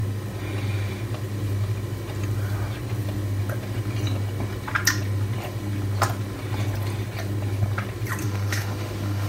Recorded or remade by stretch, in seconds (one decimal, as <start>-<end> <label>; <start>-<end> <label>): 0.0-8.2 recorded; 8.2-9.3 remade